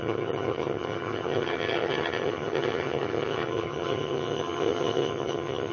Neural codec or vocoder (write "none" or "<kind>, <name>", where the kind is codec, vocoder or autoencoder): vocoder, HiFi-GAN